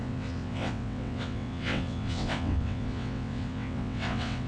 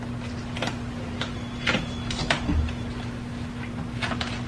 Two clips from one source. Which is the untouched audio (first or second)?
second